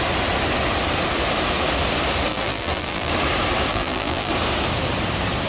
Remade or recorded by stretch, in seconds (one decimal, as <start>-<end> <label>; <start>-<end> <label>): 0.0-2.3 recorded; 2.3-3.1 remade; 3.1-3.7 recorded; 3.7-4.3 remade; 4.3-5.5 recorded